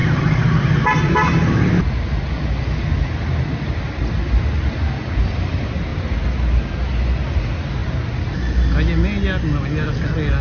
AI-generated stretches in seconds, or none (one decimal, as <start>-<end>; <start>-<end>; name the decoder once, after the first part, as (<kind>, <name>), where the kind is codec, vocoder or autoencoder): none